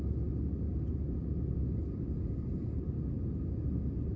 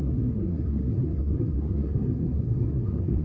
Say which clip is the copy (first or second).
second